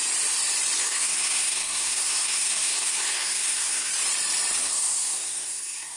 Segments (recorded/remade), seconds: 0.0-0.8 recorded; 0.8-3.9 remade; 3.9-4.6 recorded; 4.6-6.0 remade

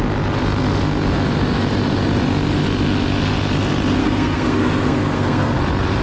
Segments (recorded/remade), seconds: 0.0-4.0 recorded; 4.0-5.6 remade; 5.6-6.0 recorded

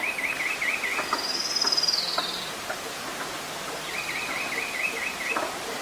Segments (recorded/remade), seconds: 0.0-5.8 recorded

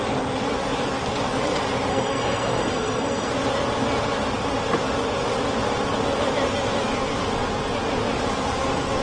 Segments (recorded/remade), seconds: 0.0-1.9 recorded; 1.9-3.3 remade; 3.3-9.0 recorded

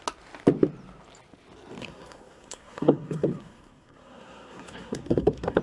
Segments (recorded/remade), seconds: 0.0-1.8 recorded; 1.8-5.6 remade

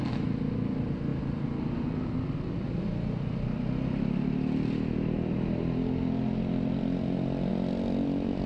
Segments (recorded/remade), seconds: 0.0-8.5 recorded